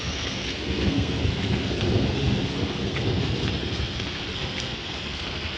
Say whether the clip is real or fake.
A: fake